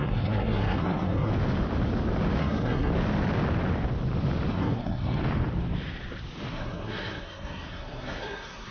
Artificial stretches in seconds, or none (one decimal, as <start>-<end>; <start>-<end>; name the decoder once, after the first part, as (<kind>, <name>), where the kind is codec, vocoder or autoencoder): 0.0-1.3 (codec, SNAC); 2.4-2.9; 4.5-5.2; 6.5-8.7